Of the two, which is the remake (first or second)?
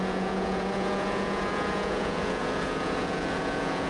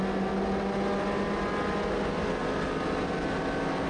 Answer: first